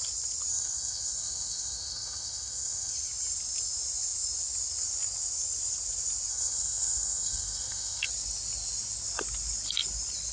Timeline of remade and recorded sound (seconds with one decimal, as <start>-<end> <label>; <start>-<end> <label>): 0.0-0.5 recorded; 0.5-2.9 remade; 2.9-6.3 recorded; 6.3-8.1 remade; 8.1-10.3 recorded